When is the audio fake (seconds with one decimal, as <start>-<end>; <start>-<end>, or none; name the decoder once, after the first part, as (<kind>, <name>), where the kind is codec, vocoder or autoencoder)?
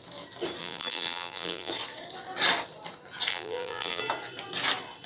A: 0.6-1.7 (vocoder, BigVGAN v2); 3.3-4.0